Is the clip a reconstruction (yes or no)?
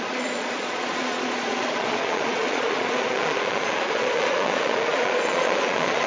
yes